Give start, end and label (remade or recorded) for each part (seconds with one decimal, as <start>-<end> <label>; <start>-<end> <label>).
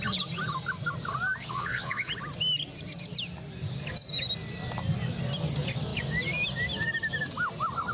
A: 0.0-1.4 recorded; 1.4-2.1 remade; 2.1-7.9 recorded